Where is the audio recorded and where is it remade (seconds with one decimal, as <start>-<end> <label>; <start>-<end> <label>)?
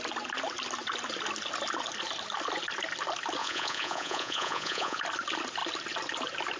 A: 0.0-3.4 recorded; 3.4-5.0 remade; 5.0-6.6 recorded